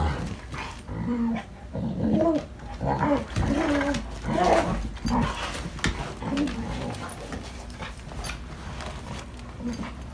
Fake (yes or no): no